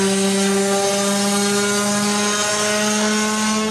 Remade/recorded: recorded